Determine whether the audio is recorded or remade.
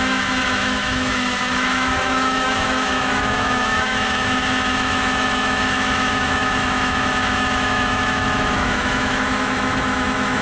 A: remade